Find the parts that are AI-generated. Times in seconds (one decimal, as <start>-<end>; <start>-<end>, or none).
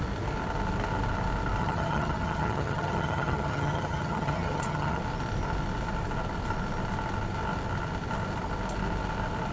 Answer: 1.6-5.0